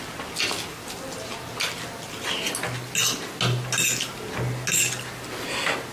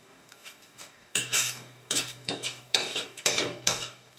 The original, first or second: first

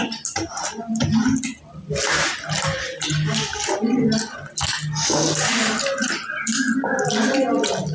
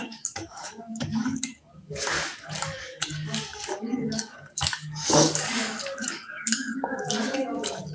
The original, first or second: first